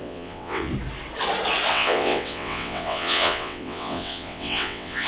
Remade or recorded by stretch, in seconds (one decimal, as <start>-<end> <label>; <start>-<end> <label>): 0.0-0.7 remade; 0.7-1.7 recorded; 1.7-5.1 remade